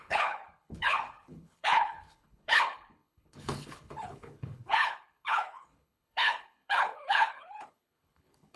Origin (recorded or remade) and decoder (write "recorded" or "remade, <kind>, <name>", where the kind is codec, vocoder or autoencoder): remade, codec, HILCodec